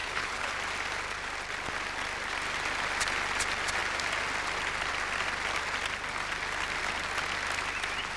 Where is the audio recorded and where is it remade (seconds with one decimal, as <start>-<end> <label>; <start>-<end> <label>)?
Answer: 0.0-0.5 remade; 0.5-8.2 recorded